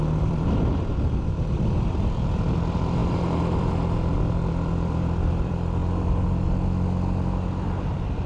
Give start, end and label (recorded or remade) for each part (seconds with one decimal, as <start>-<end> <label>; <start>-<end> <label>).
0.0-5.8 remade; 5.8-8.3 recorded